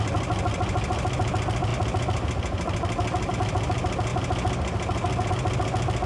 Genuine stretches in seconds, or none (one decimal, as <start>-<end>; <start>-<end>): 0.0-6.1